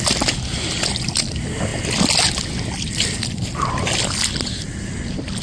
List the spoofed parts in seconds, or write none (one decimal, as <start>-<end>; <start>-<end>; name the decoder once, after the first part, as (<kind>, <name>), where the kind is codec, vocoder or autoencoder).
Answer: none